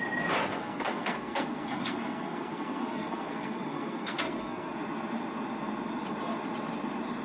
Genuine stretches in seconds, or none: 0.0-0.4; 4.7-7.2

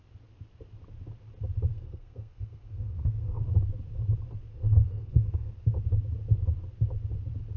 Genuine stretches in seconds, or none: 0.0-1.7; 3.4-4.5; 5.5-7.6

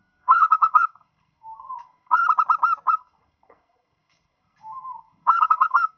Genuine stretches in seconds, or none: 2.2-2.9

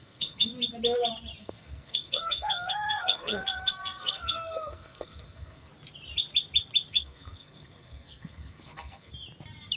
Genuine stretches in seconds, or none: 0.5-1.4; 5.7-6.9; 9.1-9.8

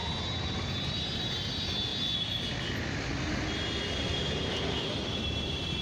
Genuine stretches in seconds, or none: 0.0-5.8